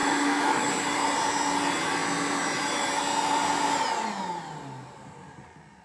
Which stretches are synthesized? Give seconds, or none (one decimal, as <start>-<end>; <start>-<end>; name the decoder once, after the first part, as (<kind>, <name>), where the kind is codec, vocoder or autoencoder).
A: 0.0-0.7 (autoencoder, DAC-VAE)